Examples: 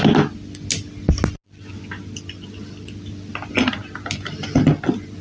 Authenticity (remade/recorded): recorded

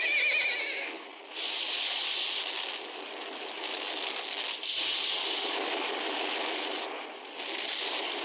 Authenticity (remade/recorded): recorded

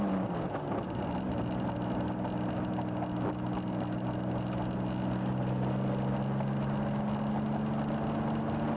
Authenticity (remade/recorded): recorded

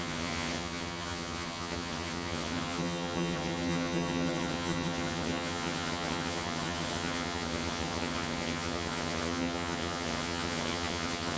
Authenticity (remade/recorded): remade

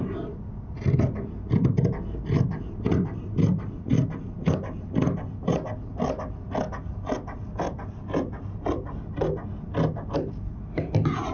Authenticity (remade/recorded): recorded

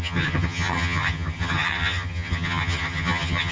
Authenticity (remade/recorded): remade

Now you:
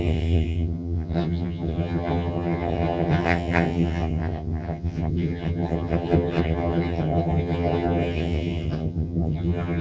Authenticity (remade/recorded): remade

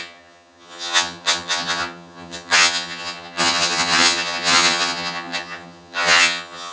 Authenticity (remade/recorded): remade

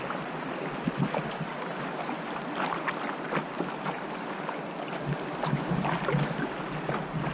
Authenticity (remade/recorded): recorded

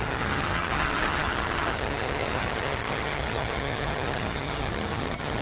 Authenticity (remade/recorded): remade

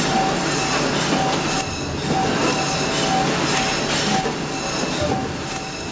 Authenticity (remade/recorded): recorded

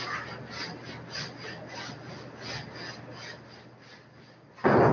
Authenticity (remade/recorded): recorded